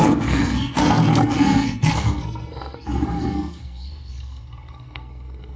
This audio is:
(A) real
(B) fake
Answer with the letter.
B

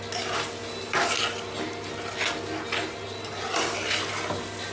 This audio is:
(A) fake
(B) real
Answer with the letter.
B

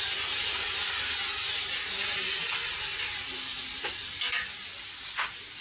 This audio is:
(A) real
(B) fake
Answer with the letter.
A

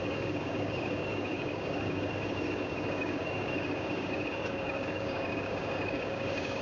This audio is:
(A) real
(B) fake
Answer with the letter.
B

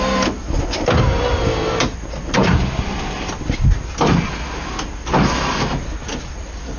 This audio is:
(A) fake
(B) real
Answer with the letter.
B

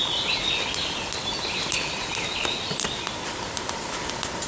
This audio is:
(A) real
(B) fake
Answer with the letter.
A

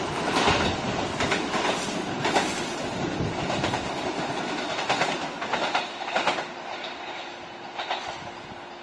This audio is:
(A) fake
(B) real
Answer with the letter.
B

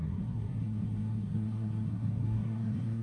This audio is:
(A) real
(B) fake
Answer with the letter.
B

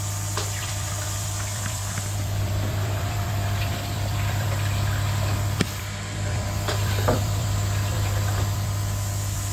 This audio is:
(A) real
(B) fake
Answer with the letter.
B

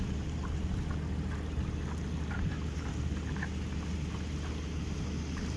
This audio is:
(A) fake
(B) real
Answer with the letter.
B